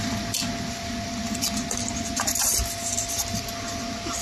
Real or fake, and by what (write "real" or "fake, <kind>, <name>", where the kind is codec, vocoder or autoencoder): real